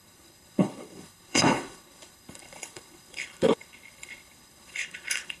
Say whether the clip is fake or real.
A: fake